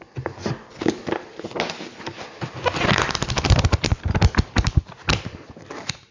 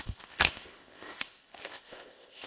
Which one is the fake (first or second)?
second